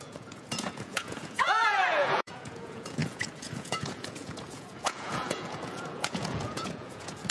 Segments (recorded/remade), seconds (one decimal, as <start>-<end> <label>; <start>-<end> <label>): 0.0-7.3 remade